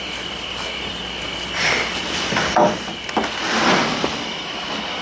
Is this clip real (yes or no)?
yes